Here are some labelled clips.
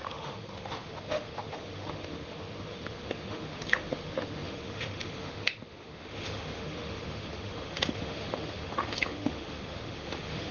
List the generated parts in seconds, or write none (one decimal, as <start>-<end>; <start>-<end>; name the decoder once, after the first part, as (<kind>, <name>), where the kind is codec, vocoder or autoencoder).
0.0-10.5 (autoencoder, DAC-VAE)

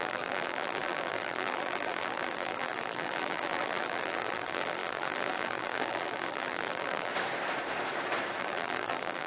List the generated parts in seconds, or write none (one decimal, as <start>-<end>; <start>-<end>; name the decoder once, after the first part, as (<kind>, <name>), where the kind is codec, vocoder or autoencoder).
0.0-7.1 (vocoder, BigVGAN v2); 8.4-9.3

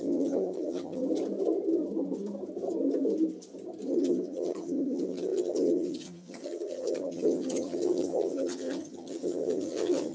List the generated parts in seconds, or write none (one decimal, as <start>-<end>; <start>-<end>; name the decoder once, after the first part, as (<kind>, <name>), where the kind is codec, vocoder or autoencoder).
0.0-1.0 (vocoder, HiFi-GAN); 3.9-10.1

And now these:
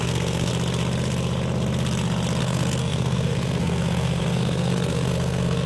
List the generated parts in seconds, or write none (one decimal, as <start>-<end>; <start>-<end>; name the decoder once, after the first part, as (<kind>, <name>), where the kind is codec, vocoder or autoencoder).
0.0-0.5 (codec, SNAC); 2.4-5.7